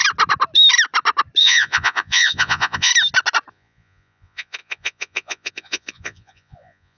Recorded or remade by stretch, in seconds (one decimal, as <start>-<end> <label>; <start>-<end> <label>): 0.0-1.4 recorded; 1.4-2.9 remade; 2.9-3.5 recorded; 3.5-7.0 remade